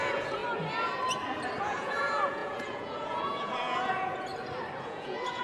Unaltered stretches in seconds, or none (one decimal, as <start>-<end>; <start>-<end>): 0.4-1.6; 4.3-4.8